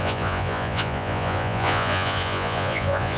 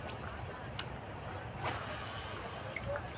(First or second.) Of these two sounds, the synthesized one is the first